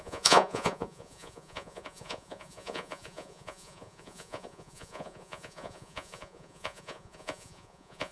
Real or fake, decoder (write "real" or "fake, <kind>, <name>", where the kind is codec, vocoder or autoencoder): fake, vocoder, Vocos